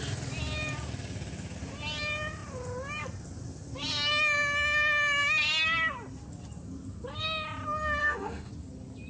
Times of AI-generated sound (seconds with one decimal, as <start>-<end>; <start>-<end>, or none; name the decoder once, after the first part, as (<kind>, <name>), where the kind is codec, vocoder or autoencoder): 8.0-8.5 (autoencoder, DAC-VAE)